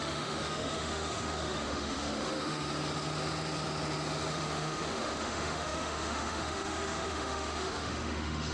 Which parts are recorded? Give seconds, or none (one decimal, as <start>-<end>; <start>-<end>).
2.7-4.3